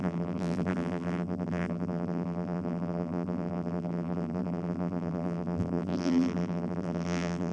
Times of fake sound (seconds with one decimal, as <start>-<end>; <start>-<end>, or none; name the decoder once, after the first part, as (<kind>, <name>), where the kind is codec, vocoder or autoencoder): 0.0-7.5 (vocoder, BigVGAN v2)

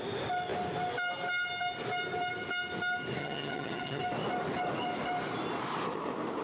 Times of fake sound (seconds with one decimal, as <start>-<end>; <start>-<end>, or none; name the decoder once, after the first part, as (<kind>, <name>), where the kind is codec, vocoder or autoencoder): 3.2-4.0 (vocoder, HiFi-GAN)

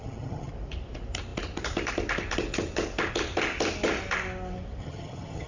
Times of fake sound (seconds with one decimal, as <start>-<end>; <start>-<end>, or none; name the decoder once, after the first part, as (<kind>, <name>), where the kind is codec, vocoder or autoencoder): 0.0-0.5 (vocoder, HiFi-GAN); 4.8-5.5

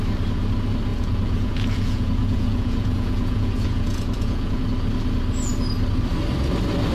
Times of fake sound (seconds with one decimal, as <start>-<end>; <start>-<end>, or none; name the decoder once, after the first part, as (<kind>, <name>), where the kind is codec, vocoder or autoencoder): 0.9-4.6 (vocoder, Vocos)

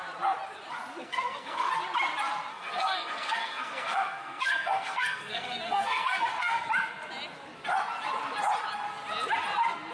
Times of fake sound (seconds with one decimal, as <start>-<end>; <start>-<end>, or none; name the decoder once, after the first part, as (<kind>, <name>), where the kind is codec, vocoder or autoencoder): 1.0-1.7 (codec, SNAC); 2.5-6.7